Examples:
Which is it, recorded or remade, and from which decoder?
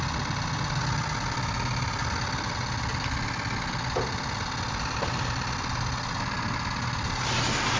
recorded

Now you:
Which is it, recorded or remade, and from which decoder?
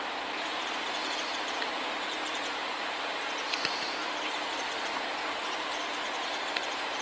remade, vocoder, BigVGAN v2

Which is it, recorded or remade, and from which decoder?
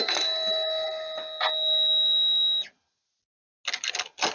recorded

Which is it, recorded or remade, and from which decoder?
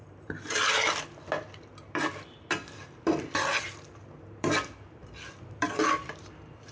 remade, vocoder, BigVGAN v2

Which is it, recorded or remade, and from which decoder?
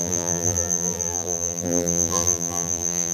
remade, vocoder, BigVGAN v2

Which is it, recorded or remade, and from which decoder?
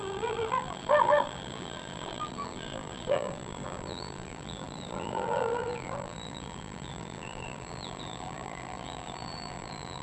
remade, vocoder, BigVGAN v2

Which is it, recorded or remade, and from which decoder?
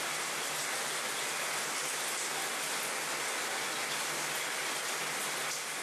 recorded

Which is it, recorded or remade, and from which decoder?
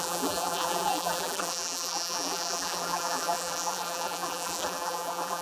remade, vocoder, BigVGAN v2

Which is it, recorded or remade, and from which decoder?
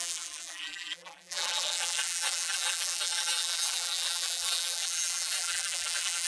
remade, vocoder, BigVGAN v2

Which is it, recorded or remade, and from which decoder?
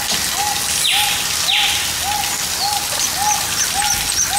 recorded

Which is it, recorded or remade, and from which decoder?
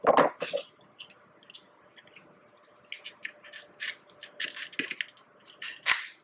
recorded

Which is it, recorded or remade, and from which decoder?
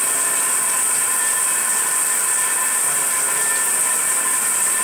recorded